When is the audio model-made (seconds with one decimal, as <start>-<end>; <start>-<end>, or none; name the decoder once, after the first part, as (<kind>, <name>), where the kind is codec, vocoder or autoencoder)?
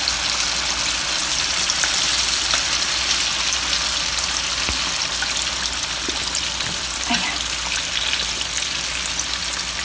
none